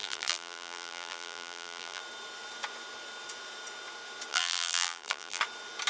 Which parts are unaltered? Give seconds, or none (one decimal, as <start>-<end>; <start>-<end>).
2.0-4.3; 5.4-5.9

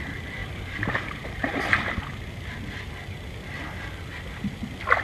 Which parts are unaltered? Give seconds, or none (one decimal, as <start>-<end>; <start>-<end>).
0.0-0.4; 1.8-5.0

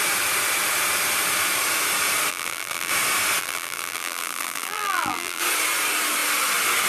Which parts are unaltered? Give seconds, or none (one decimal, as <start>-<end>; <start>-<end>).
0.0-2.3; 2.9-3.4; 5.4-6.9